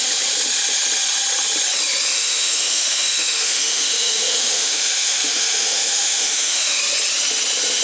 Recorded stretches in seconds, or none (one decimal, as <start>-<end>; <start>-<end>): 0.0-2.1; 6.8-7.8